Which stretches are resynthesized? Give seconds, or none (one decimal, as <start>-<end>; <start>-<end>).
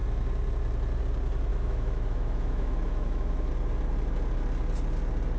1.5-3.5